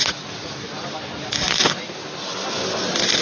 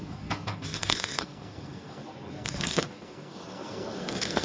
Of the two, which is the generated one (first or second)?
second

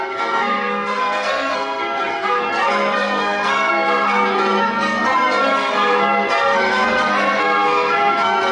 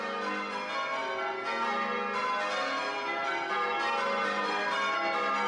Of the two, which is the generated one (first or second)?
first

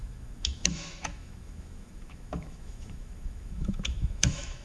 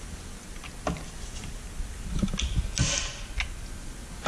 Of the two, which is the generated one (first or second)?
first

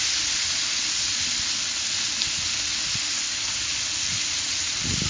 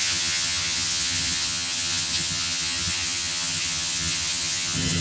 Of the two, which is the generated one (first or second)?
second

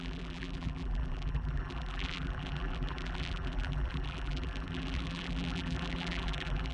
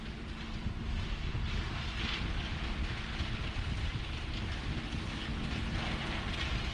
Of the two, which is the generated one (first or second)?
first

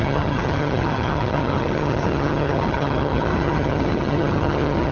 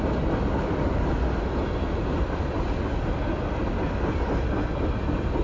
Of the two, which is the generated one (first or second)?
first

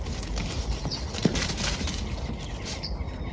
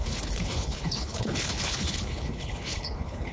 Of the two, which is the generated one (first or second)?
second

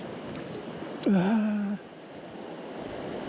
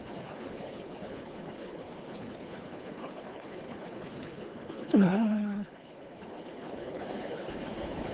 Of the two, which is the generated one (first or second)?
second